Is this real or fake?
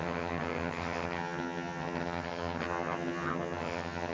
fake